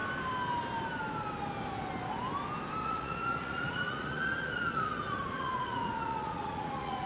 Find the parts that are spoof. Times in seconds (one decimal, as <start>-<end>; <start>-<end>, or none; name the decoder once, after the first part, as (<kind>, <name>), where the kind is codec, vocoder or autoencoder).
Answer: 2.8-7.1 (vocoder, Vocos)